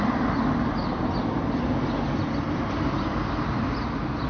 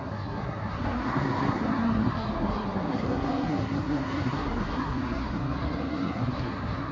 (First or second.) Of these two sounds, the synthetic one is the second